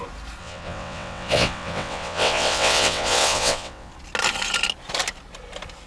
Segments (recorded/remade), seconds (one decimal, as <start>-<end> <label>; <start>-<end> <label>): 0.0-0.4 recorded; 0.4-3.9 remade; 3.9-5.9 recorded